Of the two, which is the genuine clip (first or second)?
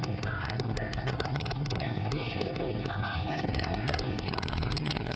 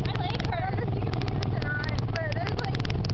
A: second